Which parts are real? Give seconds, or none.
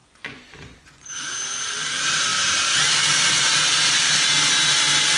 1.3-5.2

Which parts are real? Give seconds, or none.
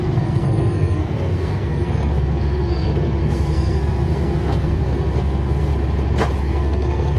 5.7-6.4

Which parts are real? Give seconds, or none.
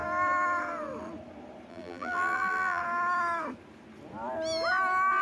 0.0-1.7; 2.8-5.2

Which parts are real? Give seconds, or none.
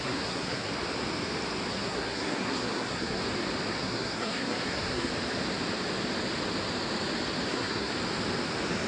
0.7-1.7; 3.2-3.7; 5.1-7.5; 7.9-8.9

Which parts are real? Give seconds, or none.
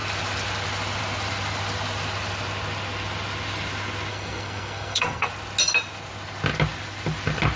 0.0-4.1; 5.3-7.6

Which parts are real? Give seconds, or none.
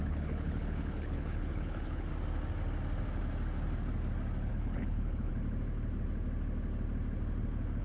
2.1-4.5; 5.3-7.8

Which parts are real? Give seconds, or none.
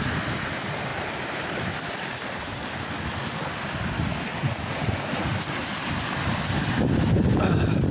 0.0-4.4; 5.3-7.9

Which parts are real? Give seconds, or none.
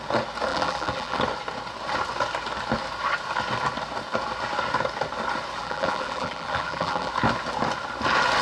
0.0-0.5; 1.2-5.6; 7.1-8.4